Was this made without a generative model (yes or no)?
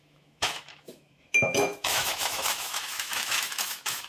no